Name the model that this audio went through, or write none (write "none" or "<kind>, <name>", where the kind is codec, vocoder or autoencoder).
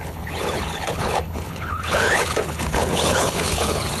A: codec, HILCodec